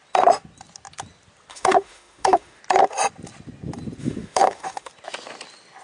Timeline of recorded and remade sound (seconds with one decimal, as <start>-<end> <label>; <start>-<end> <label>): 0.0-1.5 recorded; 1.5-2.6 remade; 2.6-4.0 recorded; 4.0-4.9 remade; 4.9-5.8 recorded

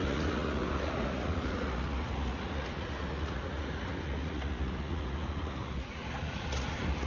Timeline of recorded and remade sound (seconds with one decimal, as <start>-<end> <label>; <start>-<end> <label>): 0.0-7.1 remade

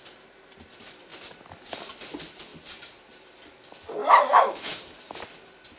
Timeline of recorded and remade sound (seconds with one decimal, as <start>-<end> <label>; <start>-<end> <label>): 0.0-4.0 recorded; 4.0-4.8 remade; 4.8-5.8 recorded

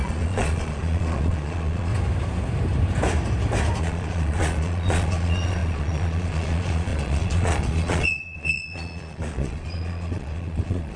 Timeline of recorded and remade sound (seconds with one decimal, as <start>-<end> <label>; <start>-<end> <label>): 0.0-1.9 remade; 1.9-3.8 recorded; 3.8-11.0 remade

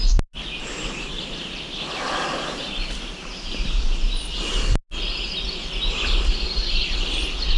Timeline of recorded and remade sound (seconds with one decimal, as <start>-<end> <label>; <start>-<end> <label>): 0.0-7.6 recorded

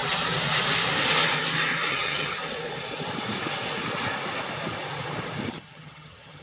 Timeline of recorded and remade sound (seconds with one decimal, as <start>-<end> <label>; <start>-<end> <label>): 0.0-1.9 recorded; 1.9-2.4 remade; 2.4-5.5 recorded; 5.5-6.4 remade